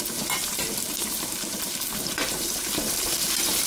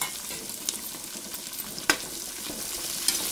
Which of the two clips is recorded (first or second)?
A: second